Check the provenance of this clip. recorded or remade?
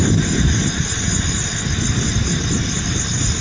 recorded